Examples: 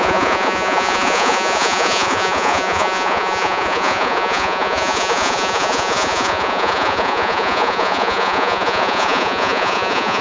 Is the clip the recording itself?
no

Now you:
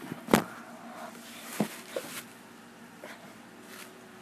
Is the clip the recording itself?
yes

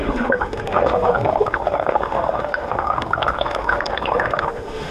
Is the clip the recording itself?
no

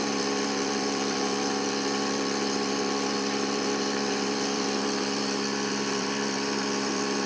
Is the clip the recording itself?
no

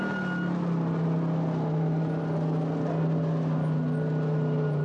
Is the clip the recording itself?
yes